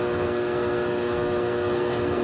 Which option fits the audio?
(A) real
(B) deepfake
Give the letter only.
B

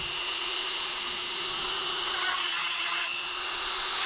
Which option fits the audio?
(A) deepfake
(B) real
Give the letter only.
A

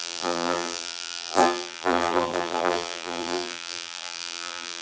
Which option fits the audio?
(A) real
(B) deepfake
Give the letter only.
B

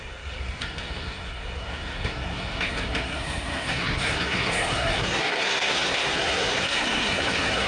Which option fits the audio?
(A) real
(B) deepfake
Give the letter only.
B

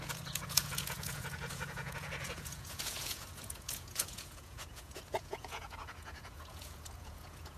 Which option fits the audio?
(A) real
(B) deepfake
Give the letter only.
B